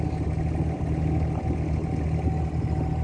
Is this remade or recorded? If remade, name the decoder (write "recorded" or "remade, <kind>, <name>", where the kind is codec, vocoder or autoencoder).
recorded